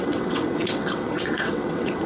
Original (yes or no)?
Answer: no